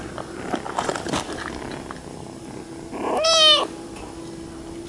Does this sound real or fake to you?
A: real